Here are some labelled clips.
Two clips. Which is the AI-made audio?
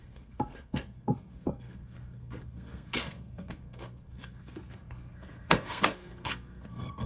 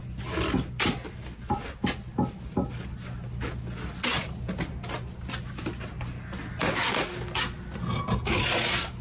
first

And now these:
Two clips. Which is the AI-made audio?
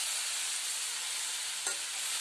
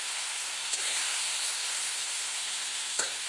second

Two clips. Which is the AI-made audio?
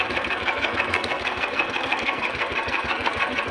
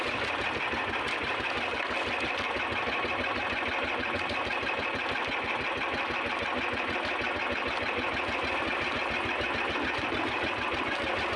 first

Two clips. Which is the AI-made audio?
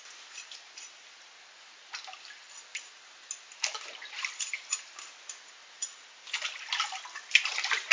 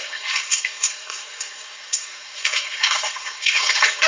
second